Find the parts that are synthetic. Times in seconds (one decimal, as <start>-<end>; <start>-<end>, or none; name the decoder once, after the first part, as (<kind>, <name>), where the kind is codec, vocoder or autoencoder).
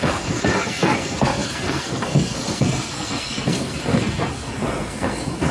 0.0-5.5 (codec, SNAC)